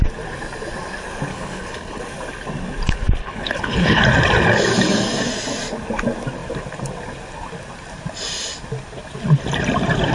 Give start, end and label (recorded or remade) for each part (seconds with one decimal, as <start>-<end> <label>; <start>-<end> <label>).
0.0-1.3 recorded; 1.3-2.0 remade; 2.0-3.2 recorded; 3.2-4.0 remade; 4.0-10.1 recorded